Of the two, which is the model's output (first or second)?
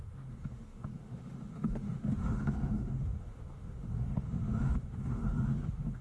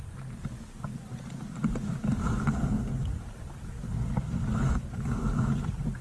first